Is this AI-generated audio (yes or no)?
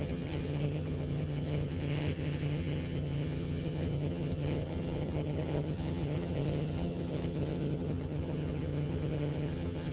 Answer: yes